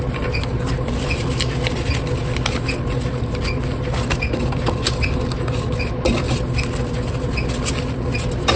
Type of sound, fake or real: real